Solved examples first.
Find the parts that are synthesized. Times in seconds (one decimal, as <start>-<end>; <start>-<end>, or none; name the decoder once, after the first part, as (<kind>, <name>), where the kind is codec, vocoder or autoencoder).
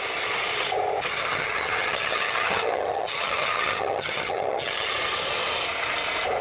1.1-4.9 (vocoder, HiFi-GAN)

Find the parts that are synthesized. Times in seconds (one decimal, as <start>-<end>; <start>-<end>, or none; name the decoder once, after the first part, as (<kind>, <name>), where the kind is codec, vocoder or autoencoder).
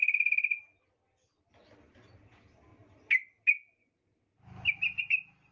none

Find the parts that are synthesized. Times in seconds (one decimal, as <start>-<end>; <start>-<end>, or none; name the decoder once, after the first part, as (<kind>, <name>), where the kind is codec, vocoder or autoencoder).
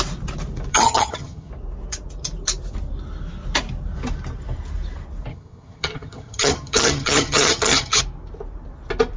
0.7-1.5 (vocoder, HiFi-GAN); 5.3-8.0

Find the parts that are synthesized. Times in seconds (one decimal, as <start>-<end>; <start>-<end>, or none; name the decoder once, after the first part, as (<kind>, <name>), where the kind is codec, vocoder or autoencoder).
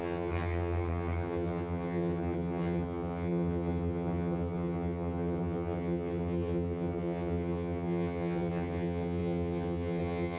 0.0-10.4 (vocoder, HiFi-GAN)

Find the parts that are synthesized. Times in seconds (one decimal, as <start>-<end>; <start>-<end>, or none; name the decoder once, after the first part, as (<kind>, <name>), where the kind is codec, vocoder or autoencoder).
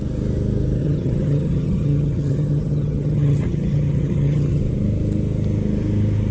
0.8-4.6 (vocoder, HiFi-GAN)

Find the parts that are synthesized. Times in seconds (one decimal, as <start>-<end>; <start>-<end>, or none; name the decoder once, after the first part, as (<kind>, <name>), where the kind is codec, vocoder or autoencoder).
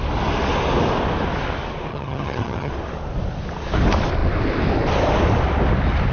1.9-2.7 (vocoder, HiFi-GAN)